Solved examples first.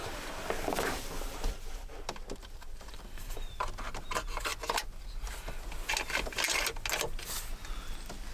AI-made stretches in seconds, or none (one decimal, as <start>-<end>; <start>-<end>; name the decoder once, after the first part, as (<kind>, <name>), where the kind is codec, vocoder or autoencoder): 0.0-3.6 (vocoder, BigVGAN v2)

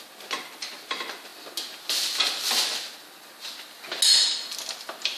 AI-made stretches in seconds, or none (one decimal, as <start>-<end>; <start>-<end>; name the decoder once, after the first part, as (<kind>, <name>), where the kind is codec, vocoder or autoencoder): none

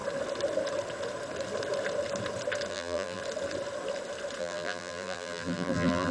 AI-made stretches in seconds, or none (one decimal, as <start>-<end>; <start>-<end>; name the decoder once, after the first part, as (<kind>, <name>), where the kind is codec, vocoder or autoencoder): 2.7-3.2 (vocoder, BigVGAN v2); 4.4-6.1

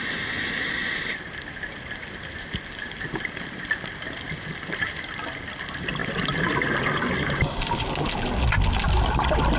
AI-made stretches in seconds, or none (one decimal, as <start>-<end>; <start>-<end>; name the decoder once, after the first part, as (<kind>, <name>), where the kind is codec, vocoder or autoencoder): 0.8-3.7 (vocoder, BigVGAN v2); 6.0-6.8